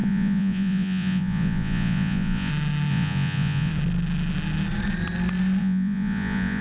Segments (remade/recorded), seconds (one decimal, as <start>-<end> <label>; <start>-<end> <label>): 0.0-2.5 remade; 2.5-2.9 recorded; 2.9-3.7 remade; 3.7-5.6 recorded; 5.6-6.6 remade